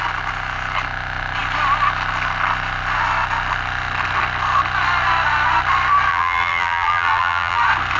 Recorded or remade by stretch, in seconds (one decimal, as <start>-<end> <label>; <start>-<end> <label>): 0.0-6.1 recorded; 6.1-7.6 remade; 7.6-8.0 recorded